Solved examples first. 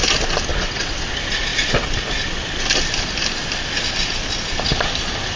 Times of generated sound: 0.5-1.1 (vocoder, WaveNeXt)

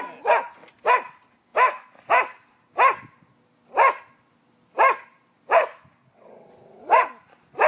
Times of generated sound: 6.0-7.1 (vocoder, WaveNeXt)

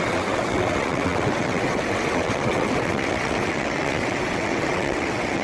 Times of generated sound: 0.0-5.4 (vocoder, WaveNeXt)

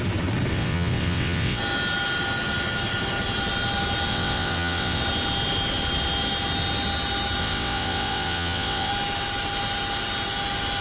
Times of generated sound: 0.5-1.6 (vocoder, WaveNeXt); 4.1-5.0; 7.4-8.9

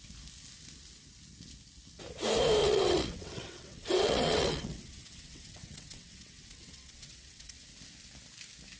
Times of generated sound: 2.6-7.5 (vocoder, WaveNeXt)